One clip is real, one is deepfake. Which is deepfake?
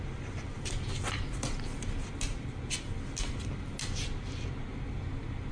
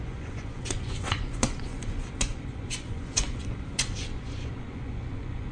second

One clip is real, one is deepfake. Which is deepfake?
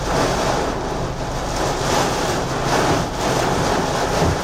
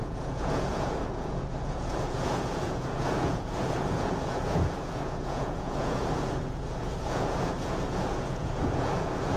second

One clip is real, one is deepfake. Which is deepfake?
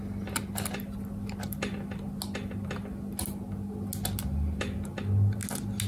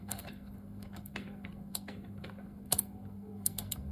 second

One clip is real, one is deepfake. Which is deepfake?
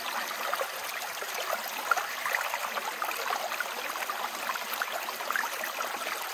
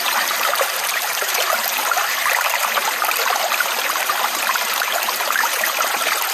second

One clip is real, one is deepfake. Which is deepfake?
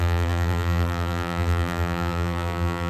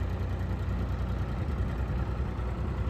first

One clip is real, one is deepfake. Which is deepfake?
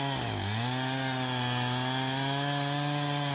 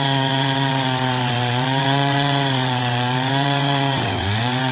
second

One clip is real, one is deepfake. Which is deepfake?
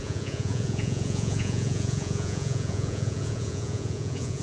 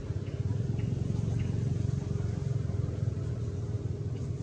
first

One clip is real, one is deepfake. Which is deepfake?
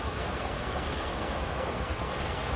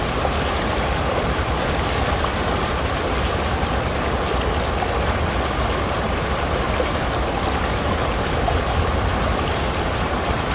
first